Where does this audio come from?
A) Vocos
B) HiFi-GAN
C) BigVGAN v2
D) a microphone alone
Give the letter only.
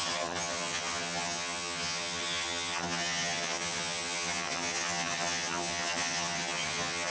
B